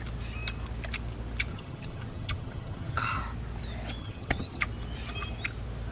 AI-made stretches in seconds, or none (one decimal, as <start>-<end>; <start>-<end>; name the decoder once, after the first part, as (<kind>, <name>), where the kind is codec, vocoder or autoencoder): 1.5-3.2 (vocoder, HiFi-GAN); 4.0-4.6